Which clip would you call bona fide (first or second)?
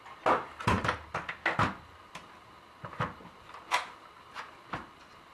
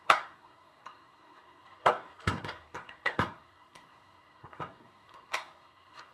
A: first